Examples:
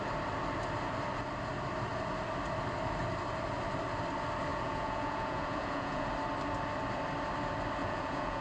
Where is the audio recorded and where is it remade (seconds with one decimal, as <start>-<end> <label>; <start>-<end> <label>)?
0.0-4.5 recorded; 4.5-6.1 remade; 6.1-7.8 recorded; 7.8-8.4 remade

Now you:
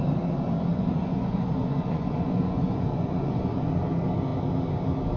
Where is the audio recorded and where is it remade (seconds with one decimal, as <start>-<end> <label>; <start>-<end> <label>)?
0.0-0.7 recorded; 0.7-3.8 remade; 3.8-5.2 recorded

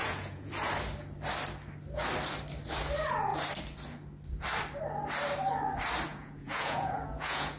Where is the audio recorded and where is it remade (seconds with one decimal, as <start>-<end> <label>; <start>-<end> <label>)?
0.0-0.5 remade; 0.5-6.1 recorded; 6.1-7.6 remade

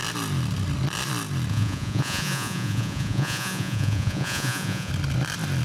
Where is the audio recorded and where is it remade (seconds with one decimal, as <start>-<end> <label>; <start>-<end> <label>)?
0.0-1.5 recorded; 1.5-4.9 remade; 4.9-5.6 recorded

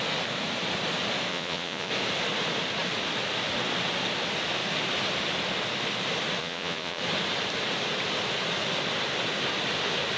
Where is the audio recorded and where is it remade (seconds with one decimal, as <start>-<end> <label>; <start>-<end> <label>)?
0.0-1.3 recorded; 1.3-1.9 remade; 1.9-6.4 recorded; 6.4-7.0 remade; 7.0-10.2 recorded

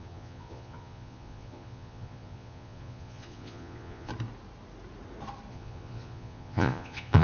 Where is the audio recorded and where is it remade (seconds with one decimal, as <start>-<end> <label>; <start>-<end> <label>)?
0.0-4.1 remade; 4.1-5.5 recorded; 5.5-7.2 remade